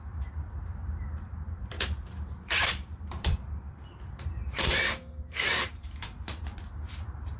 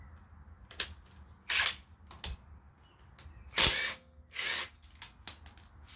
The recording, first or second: second